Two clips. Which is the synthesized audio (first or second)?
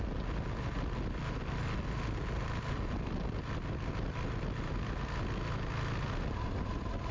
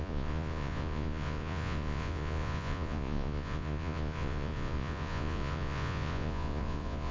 second